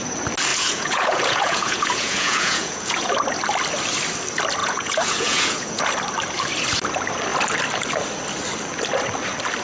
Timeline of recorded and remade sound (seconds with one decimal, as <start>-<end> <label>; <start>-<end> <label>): 0.0-0.5 recorded; 0.5-3.1 remade; 3.1-4.6 recorded; 4.6-5.8 remade; 5.8-9.6 recorded